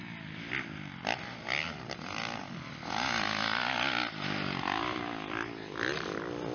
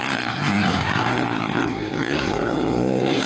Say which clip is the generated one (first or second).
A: second